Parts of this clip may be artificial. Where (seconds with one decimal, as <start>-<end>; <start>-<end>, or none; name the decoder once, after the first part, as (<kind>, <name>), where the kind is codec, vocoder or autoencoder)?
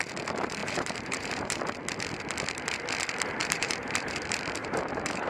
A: 0.6-1.6 (vocoder, BigVGAN v2); 3.4-4.1; 4.6-5.3